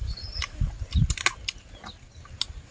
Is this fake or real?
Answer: real